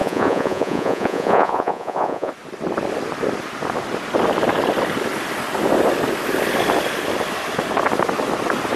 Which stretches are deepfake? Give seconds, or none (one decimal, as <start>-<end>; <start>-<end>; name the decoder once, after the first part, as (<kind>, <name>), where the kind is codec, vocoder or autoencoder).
0.0-2.3 (vocoder, Vocos)